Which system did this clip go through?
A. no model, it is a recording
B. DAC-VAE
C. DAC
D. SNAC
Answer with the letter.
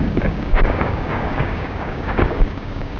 C